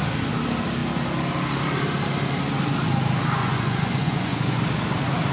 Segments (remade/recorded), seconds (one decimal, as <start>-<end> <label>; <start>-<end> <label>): 0.0-3.4 recorded; 3.4-4.6 remade; 4.6-5.3 recorded